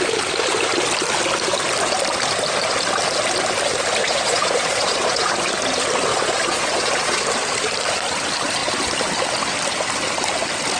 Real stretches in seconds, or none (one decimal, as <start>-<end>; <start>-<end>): 0.0-4.0; 5.3-6.1; 7.2-10.8